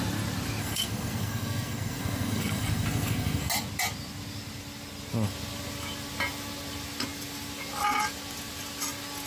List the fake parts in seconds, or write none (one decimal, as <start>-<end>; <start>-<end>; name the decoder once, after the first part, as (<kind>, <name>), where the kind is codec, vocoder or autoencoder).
0.6-3.5 (codec, SNAC)